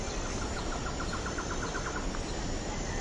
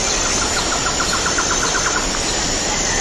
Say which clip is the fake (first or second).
second